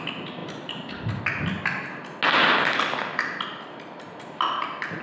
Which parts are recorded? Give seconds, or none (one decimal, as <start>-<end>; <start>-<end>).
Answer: 0.0-5.0